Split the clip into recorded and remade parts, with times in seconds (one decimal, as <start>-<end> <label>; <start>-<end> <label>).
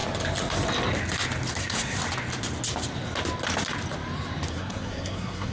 0.0-1.6 recorded; 1.6-2.0 remade; 2.0-4.5 recorded; 4.5-5.5 remade